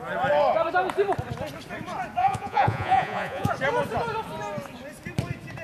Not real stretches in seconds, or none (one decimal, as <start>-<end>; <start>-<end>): 2.2-3.5